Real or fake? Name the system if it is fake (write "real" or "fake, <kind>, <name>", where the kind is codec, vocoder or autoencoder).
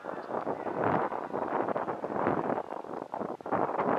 real